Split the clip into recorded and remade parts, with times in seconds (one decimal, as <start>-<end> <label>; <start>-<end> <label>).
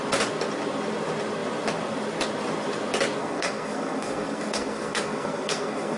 0.0-3.2 recorded; 3.2-6.0 remade